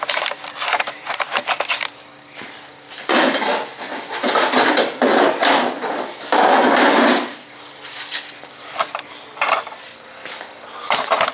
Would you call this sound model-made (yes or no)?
yes